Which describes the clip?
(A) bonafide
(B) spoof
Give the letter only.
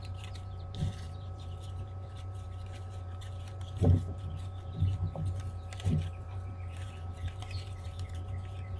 B